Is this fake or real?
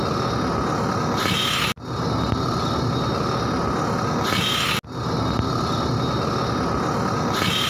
real